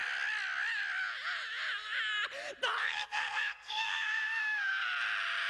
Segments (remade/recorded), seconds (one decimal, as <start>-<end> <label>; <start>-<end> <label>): 0.0-2.8 recorded; 2.8-4.7 remade; 4.7-5.5 recorded